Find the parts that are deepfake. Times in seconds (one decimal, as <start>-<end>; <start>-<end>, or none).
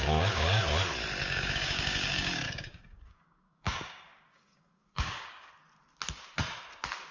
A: 0.0-0.6; 1.2-5.5